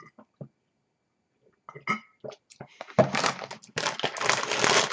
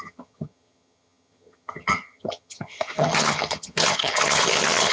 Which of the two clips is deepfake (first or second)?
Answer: second